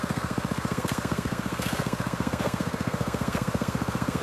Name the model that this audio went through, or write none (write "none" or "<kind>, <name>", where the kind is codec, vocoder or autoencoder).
codec, SNAC